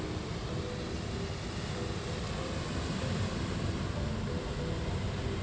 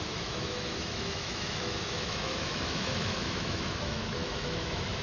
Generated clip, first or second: second